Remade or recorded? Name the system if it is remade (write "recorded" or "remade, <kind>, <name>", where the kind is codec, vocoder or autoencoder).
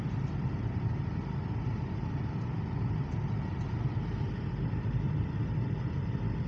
recorded